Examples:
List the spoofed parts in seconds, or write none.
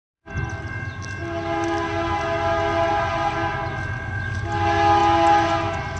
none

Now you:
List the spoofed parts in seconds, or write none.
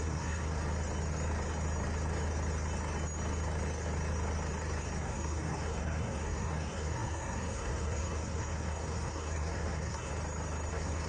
0.0-0.6; 5.0-10.1; 10.7-11.1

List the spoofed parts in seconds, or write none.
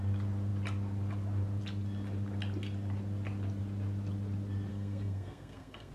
4.7-5.9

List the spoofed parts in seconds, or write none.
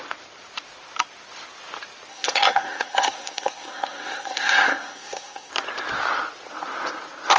2.1-5.5